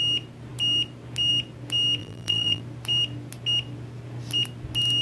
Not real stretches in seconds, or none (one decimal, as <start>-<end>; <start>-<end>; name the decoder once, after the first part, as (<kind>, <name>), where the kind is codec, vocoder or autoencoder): 2.0-2.6 (vocoder, BigVGAN v2)